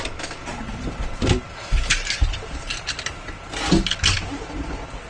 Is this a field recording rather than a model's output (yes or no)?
yes